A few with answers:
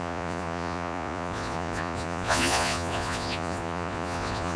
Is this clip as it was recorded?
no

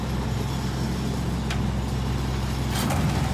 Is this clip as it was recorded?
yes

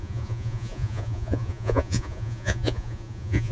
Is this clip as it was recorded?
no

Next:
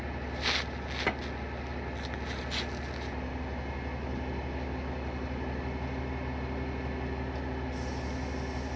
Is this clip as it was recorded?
yes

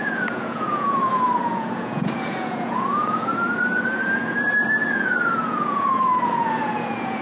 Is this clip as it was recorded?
no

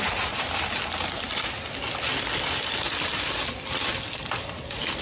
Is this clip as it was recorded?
yes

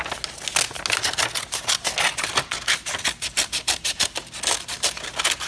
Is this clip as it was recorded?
yes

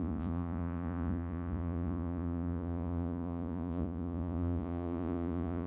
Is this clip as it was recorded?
no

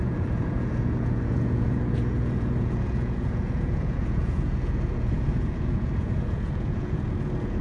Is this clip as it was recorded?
no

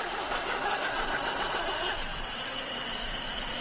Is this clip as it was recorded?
yes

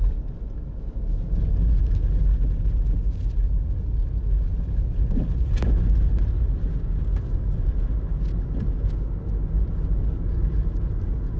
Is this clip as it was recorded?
yes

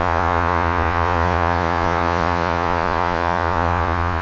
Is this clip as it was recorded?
no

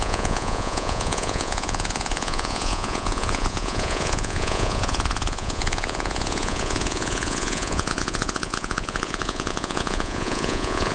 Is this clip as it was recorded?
no